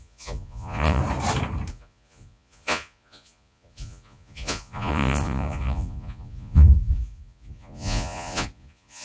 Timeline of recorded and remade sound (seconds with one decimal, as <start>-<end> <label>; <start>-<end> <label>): 0.0-1.0 remade; 1.0-1.7 recorded; 1.7-9.0 remade